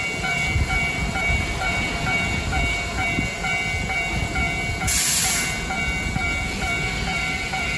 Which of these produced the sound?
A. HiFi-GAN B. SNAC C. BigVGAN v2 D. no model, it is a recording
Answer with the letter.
C